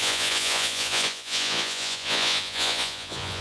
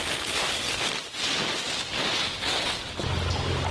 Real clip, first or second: second